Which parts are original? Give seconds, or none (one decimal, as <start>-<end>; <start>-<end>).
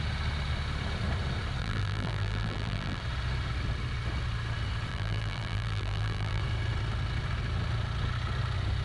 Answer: 0.0-1.6; 3.0-4.9; 6.4-8.8